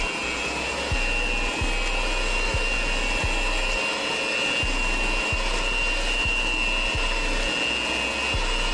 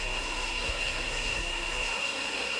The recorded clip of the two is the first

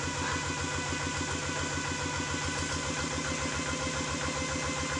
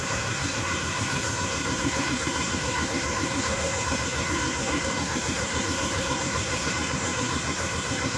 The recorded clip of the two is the first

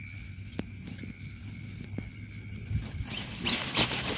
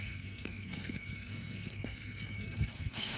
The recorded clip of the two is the first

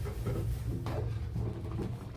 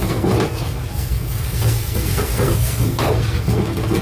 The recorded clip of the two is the first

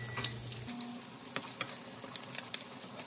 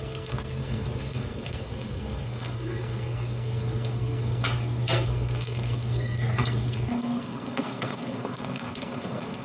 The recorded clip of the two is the first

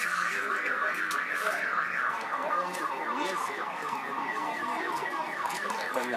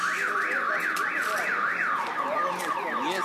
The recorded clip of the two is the second